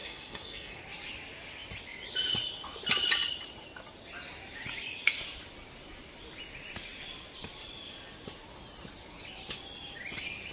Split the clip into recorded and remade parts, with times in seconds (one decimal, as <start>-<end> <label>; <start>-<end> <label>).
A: 0.0-0.8 remade; 0.8-10.5 recorded